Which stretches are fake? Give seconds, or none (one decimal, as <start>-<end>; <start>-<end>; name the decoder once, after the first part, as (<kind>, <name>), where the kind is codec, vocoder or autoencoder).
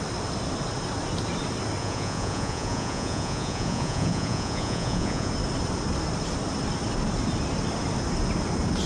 1.8-5.3 (vocoder, Vocos)